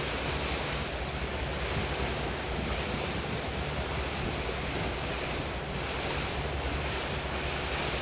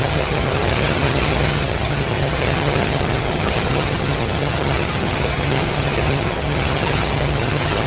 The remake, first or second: second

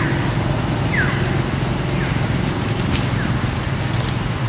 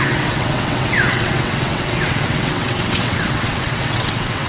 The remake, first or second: second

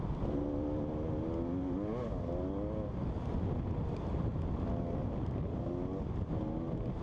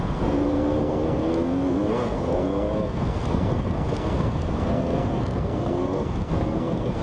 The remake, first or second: second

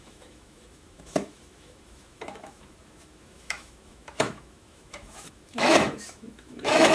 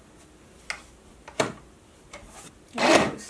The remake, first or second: first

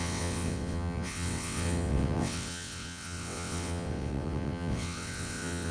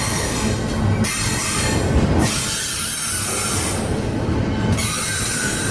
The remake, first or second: first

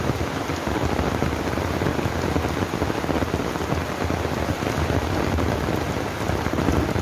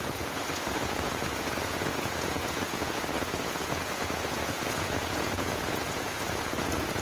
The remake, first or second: second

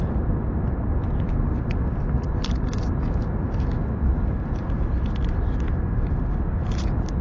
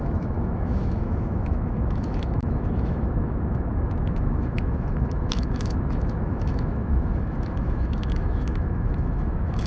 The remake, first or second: second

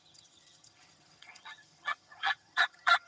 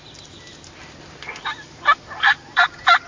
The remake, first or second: first